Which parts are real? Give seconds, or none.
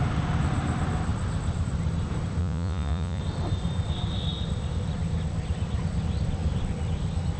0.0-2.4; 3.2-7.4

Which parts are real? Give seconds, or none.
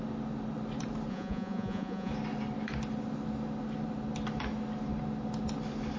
0.0-1.1; 2.1-6.0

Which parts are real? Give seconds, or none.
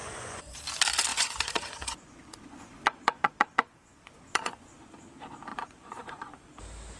0.6-1.1; 4.8-5.5; 6.6-7.0